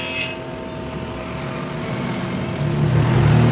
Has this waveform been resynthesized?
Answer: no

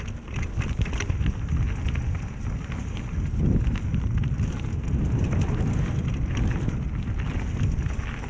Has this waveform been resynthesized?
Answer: no